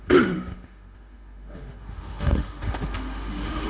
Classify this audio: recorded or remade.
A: remade